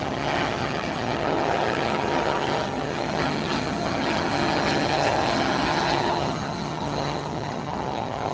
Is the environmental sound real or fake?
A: fake